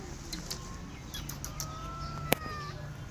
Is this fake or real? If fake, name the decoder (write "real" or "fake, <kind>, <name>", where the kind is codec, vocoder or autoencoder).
real